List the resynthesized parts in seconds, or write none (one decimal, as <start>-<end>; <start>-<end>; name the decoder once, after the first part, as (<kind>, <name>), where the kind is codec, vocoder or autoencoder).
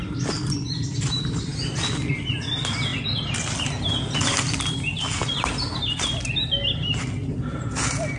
7.2-8.2 (vocoder, BigVGAN v2)